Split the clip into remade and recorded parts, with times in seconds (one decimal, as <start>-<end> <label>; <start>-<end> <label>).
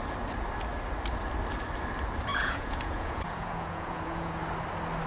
0.0-2.3 recorded; 2.3-4.4 remade; 4.4-5.1 recorded